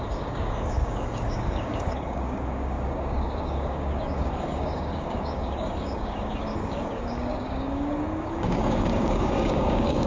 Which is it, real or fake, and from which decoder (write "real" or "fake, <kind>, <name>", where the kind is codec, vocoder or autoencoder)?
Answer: fake, codec, DAC